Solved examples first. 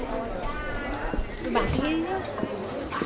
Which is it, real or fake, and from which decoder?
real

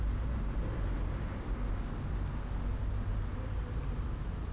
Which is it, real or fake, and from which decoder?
real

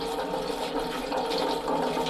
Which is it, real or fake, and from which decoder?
real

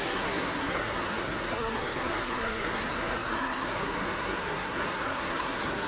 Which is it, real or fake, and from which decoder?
fake, codec, SNAC